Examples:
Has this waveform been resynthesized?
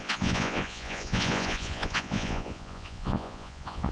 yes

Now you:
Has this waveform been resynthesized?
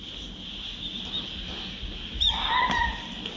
no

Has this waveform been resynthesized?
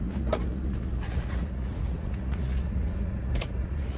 yes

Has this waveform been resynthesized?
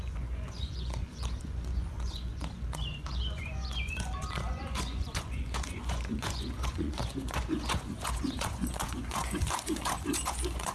yes